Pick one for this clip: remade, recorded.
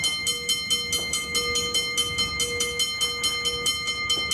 recorded